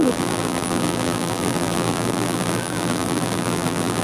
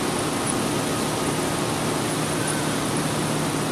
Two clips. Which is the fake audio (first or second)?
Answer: first